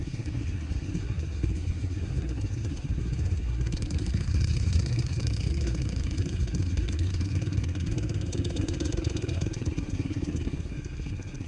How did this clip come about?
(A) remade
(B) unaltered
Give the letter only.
A